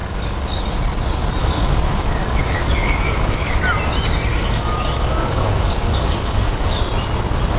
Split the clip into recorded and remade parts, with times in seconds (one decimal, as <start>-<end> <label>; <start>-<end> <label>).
0.0-0.6 remade; 0.6-1.4 recorded; 1.4-3.6 remade; 3.6-4.3 recorded; 4.3-6.8 remade; 6.8-7.6 recorded